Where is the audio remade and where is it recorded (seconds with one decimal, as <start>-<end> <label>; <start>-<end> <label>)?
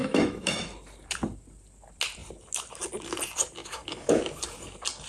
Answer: 0.0-0.6 remade; 0.6-3.6 recorded; 3.6-4.2 remade; 4.2-5.1 recorded